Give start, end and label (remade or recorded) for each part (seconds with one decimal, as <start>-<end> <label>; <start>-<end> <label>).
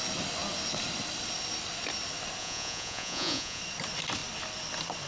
0.0-2.4 recorded; 2.4-3.6 remade; 3.6-5.1 recorded